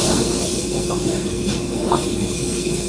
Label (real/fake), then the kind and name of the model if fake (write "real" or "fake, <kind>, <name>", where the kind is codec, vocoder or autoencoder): fake, codec, SNAC